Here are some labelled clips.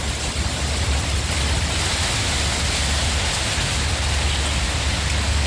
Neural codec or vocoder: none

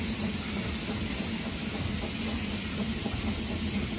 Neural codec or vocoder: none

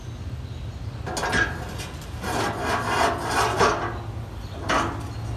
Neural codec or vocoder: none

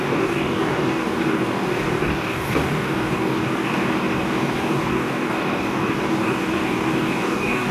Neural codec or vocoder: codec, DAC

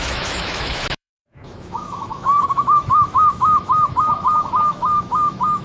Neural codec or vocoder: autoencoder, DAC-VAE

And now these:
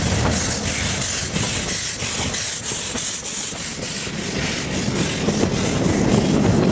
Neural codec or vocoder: none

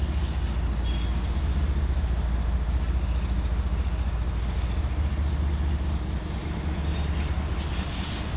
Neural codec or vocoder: none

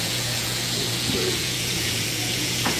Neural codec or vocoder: vocoder, Vocos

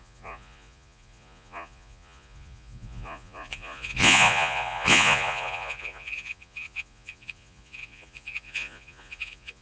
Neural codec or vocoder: vocoder, Vocos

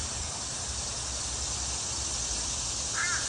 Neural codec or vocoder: none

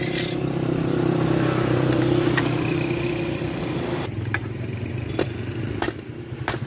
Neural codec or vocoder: vocoder, BigVGAN v2